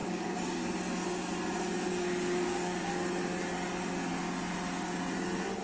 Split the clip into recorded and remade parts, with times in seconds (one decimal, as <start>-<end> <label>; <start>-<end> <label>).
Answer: 0.0-0.6 remade; 0.6-1.9 recorded; 1.9-2.9 remade; 2.9-5.6 recorded